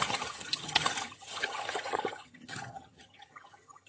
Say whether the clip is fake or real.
fake